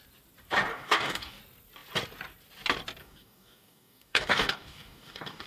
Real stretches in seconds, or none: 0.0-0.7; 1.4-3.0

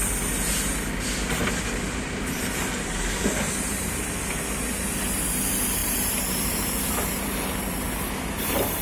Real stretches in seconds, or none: 0.0-1.4; 2.6-5.8; 7.5-8.8

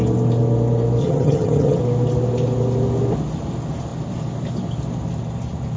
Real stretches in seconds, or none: 0.0-1.0; 1.8-5.8